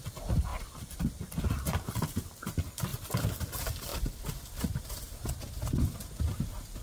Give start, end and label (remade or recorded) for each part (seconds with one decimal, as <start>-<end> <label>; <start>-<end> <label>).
0.0-0.5 recorded; 0.5-1.4 remade; 1.4-2.9 recorded; 2.9-3.4 remade; 3.4-3.9 recorded; 3.9-4.8 remade; 4.8-6.8 recorded